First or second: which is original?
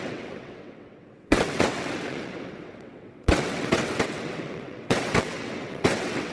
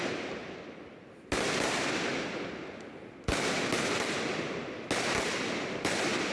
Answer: second